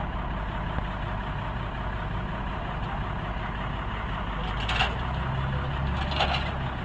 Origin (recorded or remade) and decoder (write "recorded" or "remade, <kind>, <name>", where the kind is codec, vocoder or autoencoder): recorded